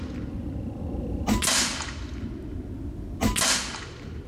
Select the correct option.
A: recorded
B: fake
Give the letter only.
A